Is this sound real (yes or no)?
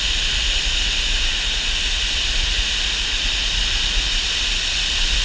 yes